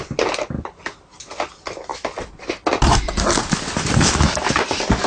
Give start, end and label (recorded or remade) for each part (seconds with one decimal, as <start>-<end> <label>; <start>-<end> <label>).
0.0-5.1 recorded